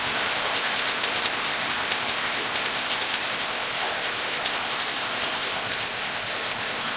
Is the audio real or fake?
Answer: fake